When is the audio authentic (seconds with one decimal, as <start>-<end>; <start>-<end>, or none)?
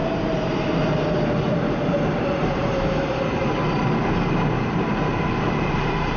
3.7-4.9